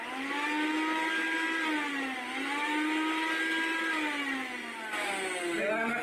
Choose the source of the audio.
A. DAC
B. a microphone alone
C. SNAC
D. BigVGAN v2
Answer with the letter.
B